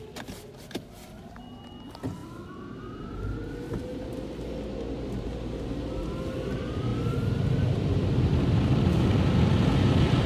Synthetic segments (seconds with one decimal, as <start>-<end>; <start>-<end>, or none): none